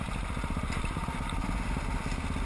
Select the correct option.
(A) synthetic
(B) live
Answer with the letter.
B